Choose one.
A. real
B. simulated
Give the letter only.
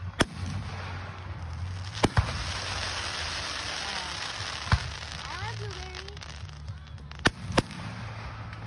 A